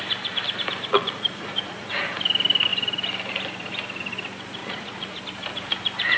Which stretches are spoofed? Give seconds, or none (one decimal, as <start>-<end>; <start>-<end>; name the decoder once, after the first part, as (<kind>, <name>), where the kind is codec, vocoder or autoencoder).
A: 0.9-2.2 (vocoder, Vocos); 4.6-5.2